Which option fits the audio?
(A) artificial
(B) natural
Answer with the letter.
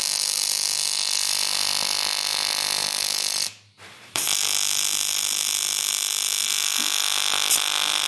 B